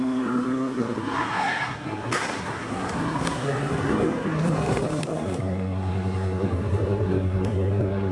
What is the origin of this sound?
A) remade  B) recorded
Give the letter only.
A